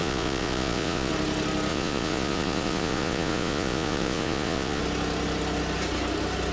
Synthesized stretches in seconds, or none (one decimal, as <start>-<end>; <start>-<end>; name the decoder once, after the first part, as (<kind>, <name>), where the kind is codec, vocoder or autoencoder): 0.0-1.1 (vocoder, Vocos); 1.7-4.8